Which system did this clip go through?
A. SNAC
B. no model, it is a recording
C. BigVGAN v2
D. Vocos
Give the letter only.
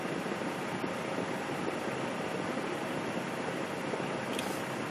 B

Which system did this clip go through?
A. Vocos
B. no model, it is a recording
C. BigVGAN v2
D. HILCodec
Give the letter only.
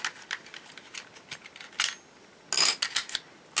B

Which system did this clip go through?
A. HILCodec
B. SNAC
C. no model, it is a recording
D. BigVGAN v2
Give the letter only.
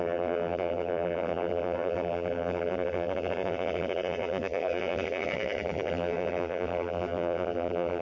D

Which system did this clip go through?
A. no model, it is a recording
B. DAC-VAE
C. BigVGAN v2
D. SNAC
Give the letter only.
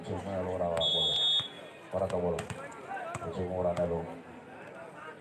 A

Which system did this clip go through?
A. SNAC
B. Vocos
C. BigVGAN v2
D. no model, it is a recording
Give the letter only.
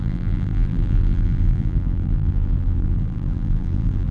C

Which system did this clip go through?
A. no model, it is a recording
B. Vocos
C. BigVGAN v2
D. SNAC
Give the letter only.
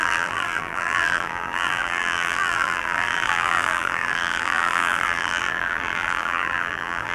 C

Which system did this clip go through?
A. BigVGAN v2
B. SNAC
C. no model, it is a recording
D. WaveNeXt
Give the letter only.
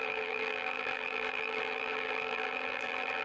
A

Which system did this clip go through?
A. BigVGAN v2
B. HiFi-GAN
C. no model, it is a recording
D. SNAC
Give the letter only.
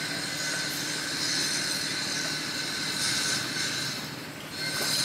C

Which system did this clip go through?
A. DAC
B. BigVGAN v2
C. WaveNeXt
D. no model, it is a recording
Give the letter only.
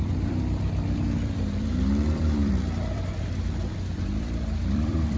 B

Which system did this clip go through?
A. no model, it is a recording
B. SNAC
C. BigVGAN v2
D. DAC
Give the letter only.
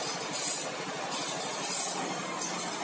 A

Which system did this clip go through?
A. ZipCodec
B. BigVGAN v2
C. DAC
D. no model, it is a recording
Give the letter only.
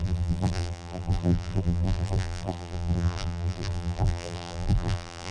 B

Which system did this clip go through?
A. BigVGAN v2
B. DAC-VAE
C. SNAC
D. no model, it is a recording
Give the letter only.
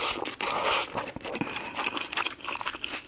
A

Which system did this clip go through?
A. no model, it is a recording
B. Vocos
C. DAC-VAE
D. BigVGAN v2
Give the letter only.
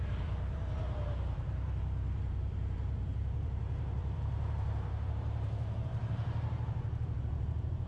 D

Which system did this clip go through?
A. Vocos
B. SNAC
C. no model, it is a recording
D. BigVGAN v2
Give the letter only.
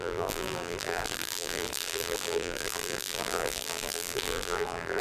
D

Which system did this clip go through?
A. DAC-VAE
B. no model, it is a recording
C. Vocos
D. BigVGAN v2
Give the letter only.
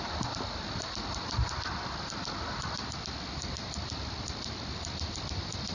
B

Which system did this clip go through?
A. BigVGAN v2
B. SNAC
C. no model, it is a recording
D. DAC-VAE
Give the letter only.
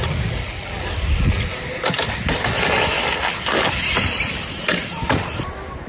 C